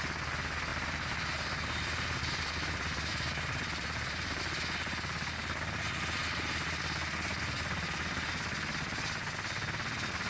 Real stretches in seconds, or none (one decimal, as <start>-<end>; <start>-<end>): 0.0-0.7; 4.4-10.3